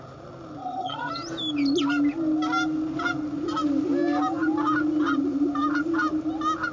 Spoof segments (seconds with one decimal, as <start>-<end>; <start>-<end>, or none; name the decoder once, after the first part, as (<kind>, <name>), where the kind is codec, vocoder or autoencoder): 0.6-1.1 (vocoder, HiFi-GAN)

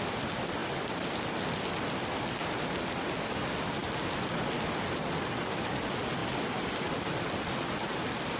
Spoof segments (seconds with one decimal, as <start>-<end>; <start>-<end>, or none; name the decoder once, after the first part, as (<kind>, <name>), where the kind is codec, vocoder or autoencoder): none